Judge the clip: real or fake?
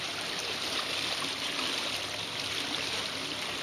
fake